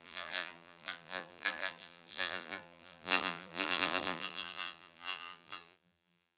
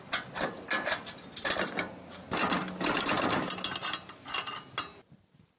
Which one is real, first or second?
second